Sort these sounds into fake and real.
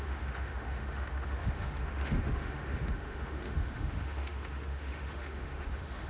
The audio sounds fake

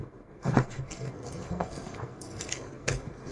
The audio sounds fake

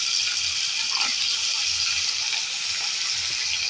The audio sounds real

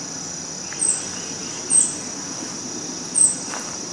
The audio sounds real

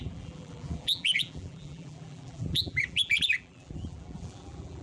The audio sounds fake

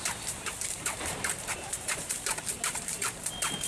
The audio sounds fake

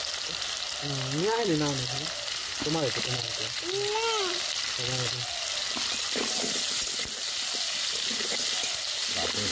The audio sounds real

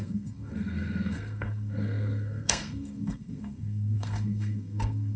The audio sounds fake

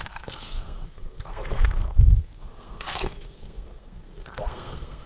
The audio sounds fake